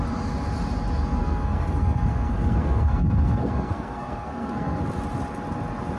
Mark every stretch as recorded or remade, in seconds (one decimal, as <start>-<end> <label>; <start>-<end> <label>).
0.0-1.2 recorded; 1.2-4.8 remade; 4.8-6.0 recorded